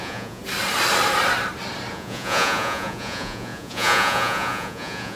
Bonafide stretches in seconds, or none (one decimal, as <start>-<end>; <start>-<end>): 0.4-1.9